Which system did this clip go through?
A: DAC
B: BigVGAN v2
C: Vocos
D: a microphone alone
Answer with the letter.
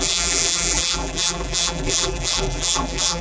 B